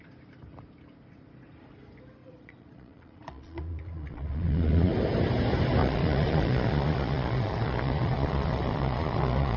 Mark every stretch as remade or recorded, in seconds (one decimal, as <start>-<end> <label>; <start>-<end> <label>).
0.0-2.2 recorded; 2.2-4.9 remade; 4.9-5.8 recorded; 5.8-9.6 remade